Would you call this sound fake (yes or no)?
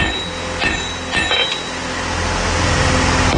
no